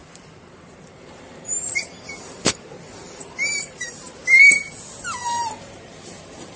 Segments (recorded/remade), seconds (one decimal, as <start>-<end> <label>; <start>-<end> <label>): 0.0-4.2 remade; 4.2-5.1 recorded; 5.1-6.6 remade